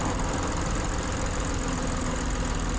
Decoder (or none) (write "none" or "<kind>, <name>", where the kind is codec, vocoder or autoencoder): none